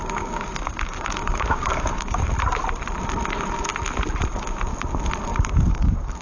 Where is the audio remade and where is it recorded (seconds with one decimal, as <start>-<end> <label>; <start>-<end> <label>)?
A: 0.0-2.3 remade; 2.3-5.3 recorded; 5.3-6.2 remade